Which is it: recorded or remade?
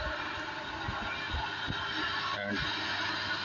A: recorded